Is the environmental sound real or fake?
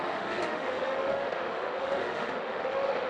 fake